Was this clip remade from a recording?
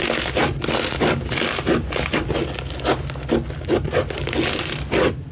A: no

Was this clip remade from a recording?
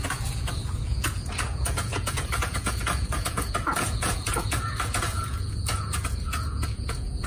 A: yes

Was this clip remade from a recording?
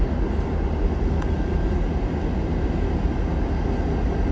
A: no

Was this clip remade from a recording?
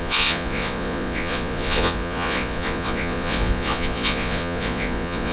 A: yes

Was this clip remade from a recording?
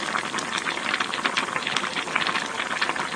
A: no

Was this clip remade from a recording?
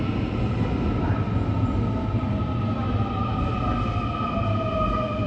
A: no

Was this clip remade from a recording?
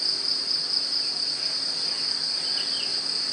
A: no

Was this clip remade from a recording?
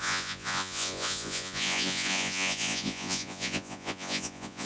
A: yes